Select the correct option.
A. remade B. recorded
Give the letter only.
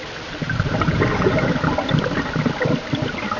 B